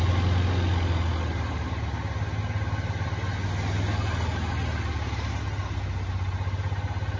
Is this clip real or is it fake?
real